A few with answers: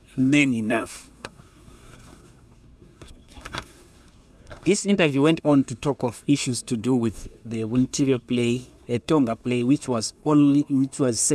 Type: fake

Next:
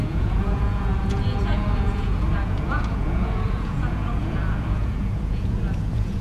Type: fake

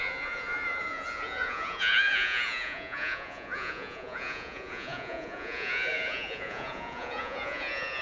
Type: fake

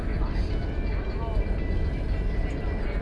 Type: real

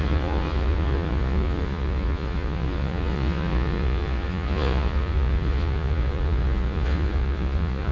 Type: fake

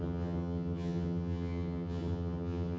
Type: fake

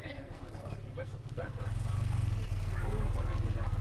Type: fake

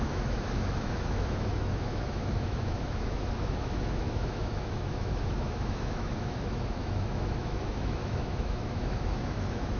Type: fake